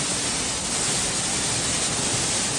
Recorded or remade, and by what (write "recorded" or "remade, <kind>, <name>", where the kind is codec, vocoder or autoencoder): recorded